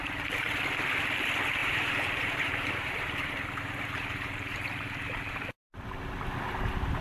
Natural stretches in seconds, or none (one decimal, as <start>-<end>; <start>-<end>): 0.9-1.6; 5.3-7.0